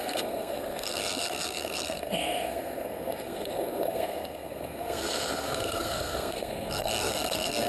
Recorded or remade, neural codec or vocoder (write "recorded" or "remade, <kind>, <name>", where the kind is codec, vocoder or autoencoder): remade, codec, SNAC